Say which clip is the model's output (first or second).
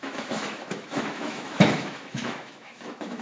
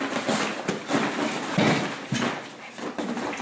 first